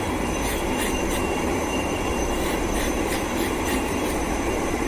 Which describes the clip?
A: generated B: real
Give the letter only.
A